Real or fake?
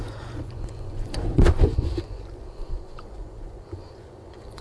fake